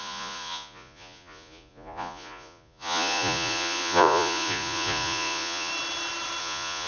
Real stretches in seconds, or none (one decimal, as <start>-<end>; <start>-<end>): 5.7-6.4